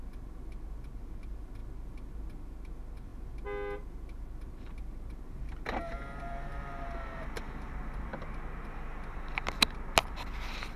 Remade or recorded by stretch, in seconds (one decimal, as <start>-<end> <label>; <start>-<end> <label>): 0.0-10.8 recorded